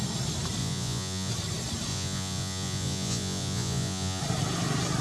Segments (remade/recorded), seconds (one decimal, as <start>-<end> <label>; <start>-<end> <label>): 0.0-0.6 recorded; 0.6-1.3 remade; 1.3-1.9 recorded; 1.9-4.2 remade; 4.2-5.0 recorded